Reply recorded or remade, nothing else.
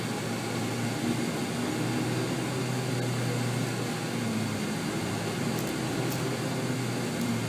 recorded